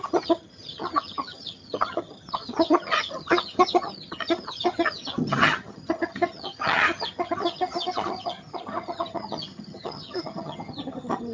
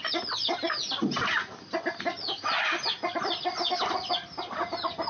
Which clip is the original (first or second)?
second